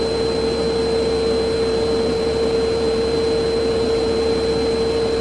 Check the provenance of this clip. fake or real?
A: real